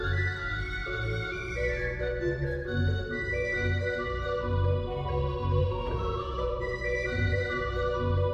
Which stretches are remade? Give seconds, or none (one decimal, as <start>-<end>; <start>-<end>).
5.6-7.7